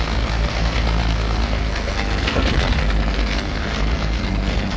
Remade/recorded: remade